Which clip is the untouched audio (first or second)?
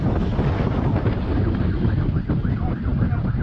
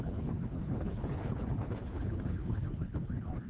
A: first